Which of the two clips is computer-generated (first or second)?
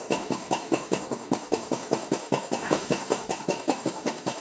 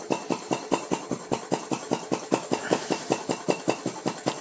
first